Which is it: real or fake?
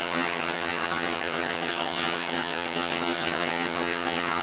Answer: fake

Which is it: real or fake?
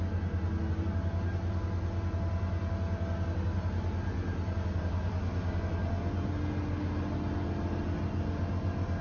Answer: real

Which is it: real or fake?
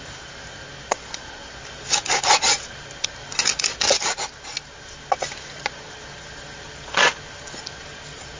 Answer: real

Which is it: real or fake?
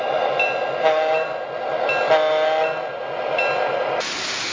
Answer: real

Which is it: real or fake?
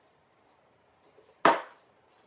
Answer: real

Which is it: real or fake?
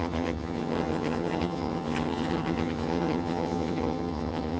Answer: fake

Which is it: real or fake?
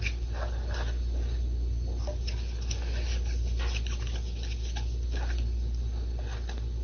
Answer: real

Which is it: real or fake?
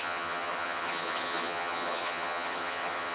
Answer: fake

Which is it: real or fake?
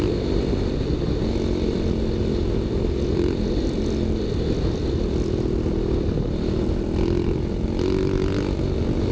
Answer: real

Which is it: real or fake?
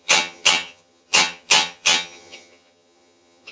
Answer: fake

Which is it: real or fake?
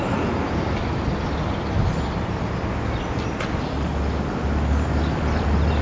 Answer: real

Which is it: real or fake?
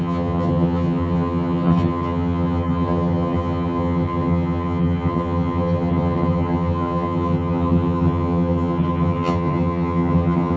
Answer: fake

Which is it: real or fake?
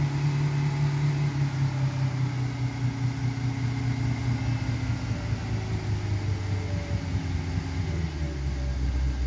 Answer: real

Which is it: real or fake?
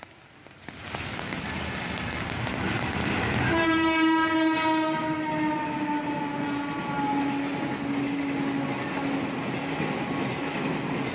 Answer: real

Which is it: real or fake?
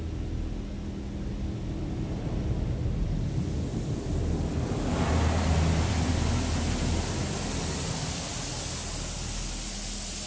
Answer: real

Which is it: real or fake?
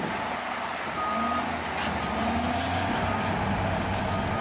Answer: real